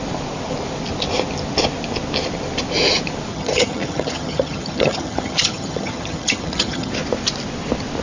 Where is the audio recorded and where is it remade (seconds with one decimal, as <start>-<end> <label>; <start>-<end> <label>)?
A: 0.0-3.3 recorded; 3.3-6.9 remade; 6.9-8.0 recorded